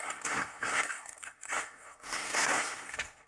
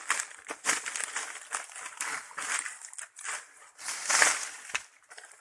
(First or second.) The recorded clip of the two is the second